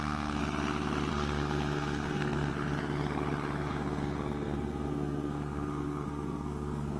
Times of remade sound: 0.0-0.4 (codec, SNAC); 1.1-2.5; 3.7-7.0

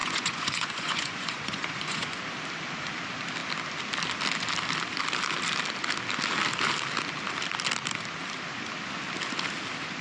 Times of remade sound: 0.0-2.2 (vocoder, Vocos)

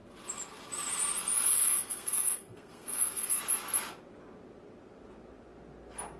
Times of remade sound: 1.5-3.4 (codec, SNAC)

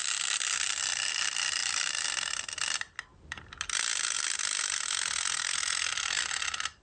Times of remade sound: none